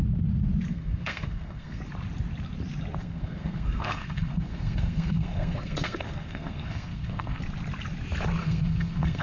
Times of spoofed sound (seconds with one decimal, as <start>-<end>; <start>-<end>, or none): 0.7-1.8; 3.0-7.4; 8.4-9.2